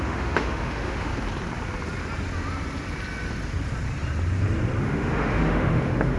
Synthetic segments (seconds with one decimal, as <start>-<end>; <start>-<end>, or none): 0.0-1.1; 4.8-6.2